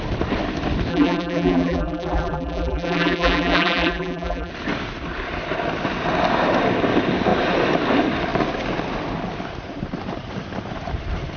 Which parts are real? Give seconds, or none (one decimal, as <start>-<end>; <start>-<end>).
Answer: 0.0-0.9; 4.5-11.4